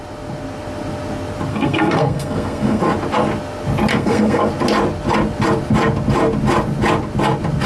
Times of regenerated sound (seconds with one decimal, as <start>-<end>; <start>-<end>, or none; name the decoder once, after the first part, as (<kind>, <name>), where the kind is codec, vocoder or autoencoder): 1.5-2.8 (codec, SNAC); 3.9-4.5